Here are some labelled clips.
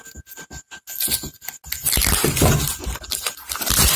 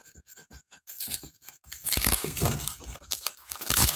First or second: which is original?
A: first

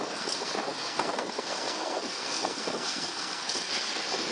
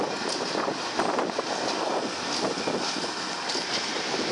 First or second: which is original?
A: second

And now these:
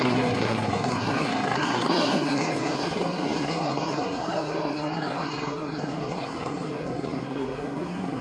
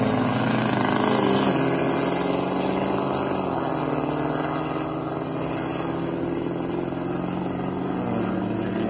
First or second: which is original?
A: second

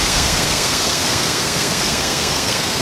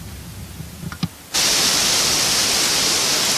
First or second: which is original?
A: second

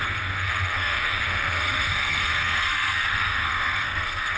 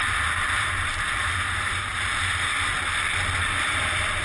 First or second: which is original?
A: second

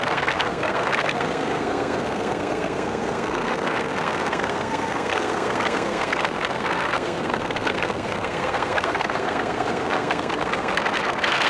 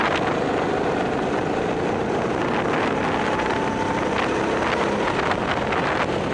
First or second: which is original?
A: second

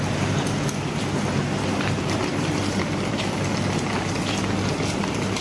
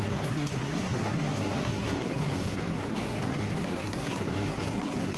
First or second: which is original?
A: first